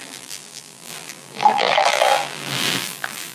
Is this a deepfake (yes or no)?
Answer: yes